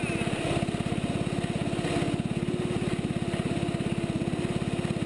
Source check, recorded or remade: recorded